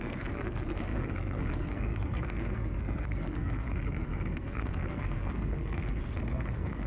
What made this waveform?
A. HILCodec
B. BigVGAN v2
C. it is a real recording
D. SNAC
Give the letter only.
D